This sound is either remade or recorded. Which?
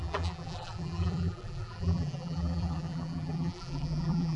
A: remade